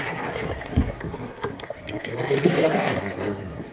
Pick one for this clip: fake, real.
fake